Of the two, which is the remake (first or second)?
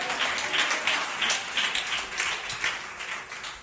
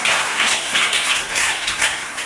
second